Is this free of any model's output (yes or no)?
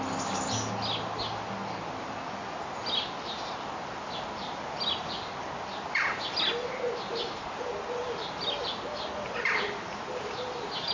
yes